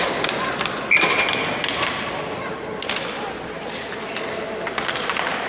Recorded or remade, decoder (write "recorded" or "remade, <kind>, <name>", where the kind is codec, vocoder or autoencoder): recorded